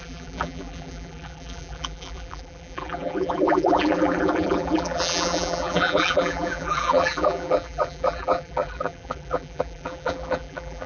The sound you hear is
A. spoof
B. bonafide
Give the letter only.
A